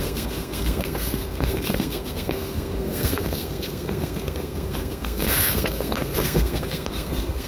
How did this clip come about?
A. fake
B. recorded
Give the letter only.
A